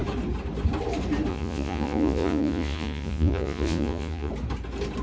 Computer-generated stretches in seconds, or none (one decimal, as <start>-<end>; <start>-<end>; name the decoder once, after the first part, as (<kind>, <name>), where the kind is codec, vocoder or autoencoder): 1.3-4.3 (vocoder, Vocos)